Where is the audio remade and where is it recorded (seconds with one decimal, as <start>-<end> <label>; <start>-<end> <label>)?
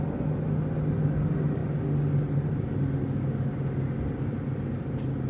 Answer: 0.0-5.3 recorded